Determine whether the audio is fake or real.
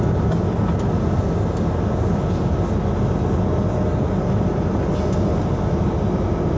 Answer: real